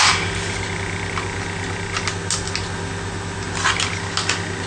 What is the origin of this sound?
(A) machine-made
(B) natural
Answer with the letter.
B